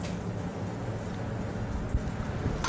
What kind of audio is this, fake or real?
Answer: real